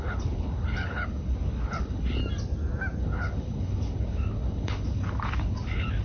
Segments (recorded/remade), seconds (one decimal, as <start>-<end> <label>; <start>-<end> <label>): 0.0-2.2 remade; 2.2-3.0 recorded; 3.0-6.0 remade